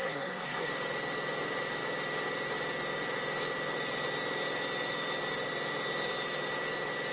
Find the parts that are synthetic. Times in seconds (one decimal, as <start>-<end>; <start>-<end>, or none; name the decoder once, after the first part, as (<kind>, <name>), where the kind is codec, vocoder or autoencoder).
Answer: 0.0-0.7 (codec, SNAC)